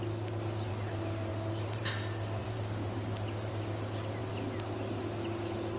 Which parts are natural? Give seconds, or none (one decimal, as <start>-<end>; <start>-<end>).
0.0-1.3; 1.9-2.4; 3.5-5.8